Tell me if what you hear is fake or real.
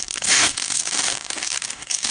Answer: fake